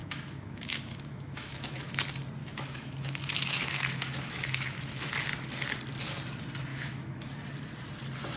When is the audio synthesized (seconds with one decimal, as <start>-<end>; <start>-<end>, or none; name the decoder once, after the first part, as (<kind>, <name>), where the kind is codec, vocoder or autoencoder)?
0.0-1.9 (autoencoder, DAC-VAE); 2.4-5.1; 6.7-7.3